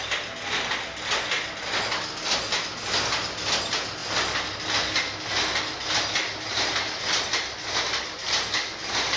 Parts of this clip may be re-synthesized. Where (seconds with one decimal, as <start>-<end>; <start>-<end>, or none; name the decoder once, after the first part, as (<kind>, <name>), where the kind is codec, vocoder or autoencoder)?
none